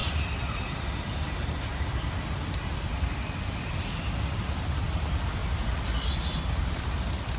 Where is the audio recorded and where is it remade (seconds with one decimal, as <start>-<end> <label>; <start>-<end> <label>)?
0.0-7.4 recorded